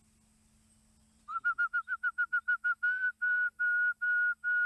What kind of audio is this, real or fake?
real